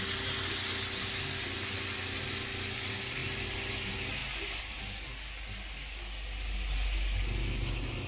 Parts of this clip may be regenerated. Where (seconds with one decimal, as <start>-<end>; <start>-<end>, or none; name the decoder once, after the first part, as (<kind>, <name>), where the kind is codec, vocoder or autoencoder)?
4.2-4.7 (vocoder, BigVGAN v2)